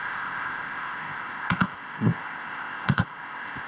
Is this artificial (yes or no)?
yes